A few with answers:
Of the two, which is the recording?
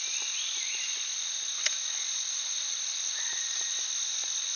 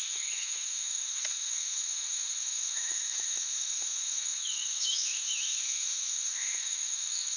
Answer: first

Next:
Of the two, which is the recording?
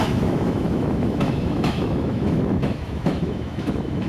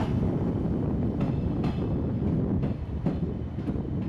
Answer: second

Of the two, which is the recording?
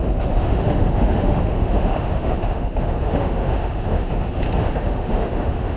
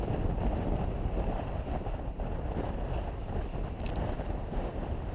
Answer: second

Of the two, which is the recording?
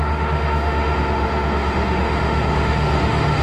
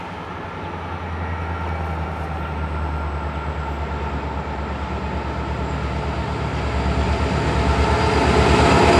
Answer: second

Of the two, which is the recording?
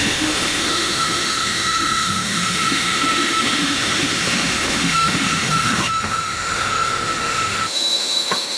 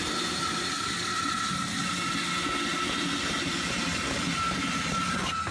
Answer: second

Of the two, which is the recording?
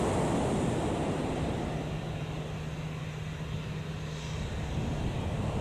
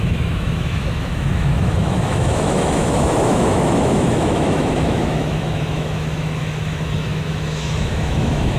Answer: first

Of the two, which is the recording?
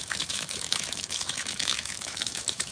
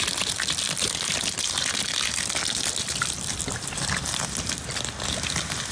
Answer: second